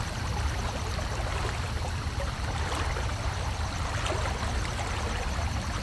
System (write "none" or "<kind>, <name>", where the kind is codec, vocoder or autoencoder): none